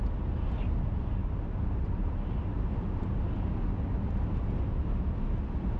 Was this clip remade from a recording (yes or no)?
no